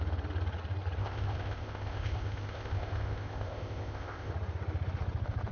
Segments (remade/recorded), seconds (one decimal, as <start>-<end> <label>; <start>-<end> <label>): 0.0-1.0 recorded; 1.0-4.3 remade; 4.3-5.5 recorded